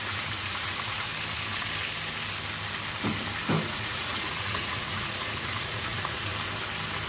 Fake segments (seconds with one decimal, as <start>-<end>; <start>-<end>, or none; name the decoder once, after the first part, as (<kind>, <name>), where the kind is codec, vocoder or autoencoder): 0.0-1.1 (vocoder, Vocos); 3.6-6.3